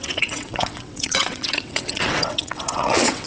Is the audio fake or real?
fake